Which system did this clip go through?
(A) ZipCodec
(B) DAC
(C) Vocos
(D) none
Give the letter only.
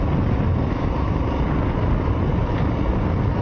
D